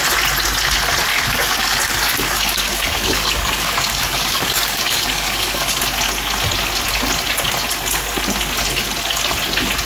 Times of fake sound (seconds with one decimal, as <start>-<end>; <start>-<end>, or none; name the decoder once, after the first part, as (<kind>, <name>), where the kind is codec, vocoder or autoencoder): 1.1-5.8 (codec, DAC)